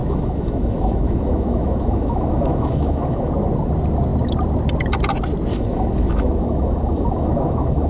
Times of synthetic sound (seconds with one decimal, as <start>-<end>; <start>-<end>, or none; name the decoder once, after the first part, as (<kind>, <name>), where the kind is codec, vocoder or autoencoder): 0.0-3.3 (autoencoder, DAC-VAE); 5.5-7.9